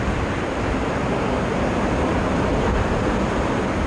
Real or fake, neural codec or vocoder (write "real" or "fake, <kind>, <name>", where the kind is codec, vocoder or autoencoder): real